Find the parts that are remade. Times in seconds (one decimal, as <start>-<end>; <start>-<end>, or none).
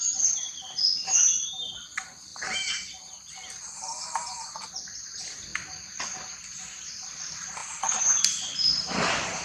0.0-0.5; 1.8-2.3; 3.3-5.5; 6.9-9.4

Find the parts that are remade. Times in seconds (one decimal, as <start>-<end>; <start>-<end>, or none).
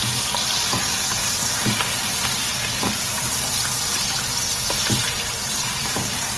1.4-2.5; 5.1-6.4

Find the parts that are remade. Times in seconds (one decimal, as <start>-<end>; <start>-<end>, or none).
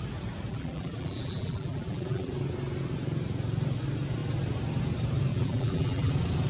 0.5-2.3; 5.3-6.1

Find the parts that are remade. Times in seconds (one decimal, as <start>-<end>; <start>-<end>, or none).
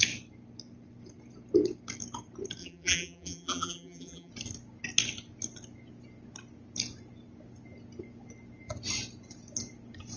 2.6-4.3